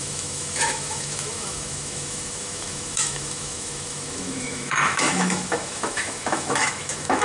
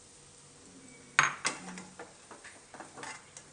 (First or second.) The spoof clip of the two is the first